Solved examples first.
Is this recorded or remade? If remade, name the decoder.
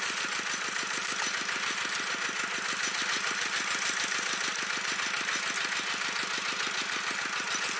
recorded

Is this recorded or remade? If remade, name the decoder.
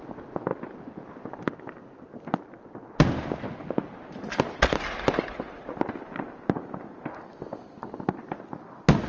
recorded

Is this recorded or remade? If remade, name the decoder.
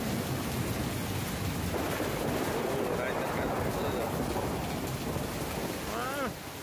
recorded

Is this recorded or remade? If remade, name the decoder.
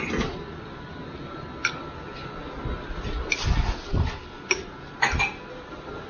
recorded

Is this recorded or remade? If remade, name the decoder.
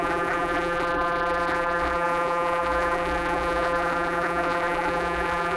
remade, vocoder, BigVGAN v2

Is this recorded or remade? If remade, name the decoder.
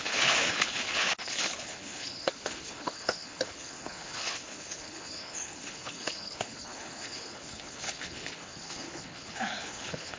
remade, codec, HILCodec